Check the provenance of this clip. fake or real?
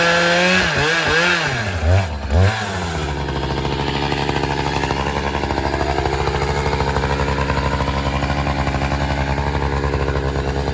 real